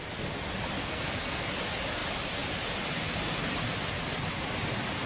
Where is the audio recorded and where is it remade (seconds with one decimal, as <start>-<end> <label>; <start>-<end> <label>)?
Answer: 0.0-0.8 recorded; 0.8-1.5 remade; 1.5-5.1 recorded